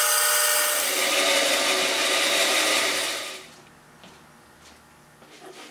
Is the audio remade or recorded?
recorded